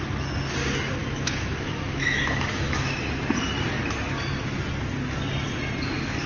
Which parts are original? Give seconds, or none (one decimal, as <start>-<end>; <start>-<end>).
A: 0.0-1.0; 3.0-6.3